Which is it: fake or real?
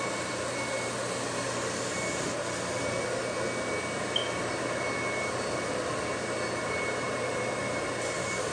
real